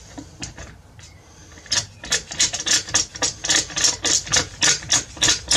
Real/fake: real